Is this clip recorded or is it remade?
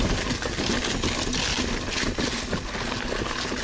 recorded